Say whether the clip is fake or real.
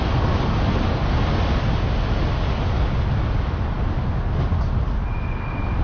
real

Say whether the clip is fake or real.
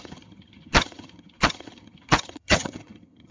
fake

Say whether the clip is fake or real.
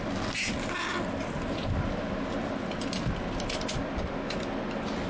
real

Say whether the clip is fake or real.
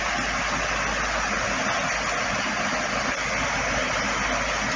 real